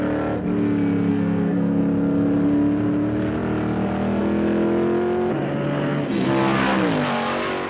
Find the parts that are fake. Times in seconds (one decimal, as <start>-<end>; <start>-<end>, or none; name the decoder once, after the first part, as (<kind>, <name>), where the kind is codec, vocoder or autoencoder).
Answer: 1.1-1.8 (codec, SNAC)